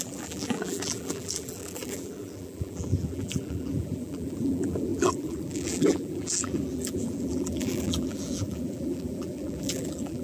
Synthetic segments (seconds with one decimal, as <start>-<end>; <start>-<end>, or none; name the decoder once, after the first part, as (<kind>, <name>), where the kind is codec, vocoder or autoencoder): 0.0-10.2 (vocoder, BigVGAN v2)

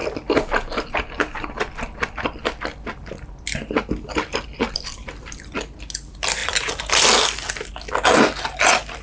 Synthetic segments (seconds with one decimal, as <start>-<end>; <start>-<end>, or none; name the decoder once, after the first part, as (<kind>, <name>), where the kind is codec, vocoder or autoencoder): none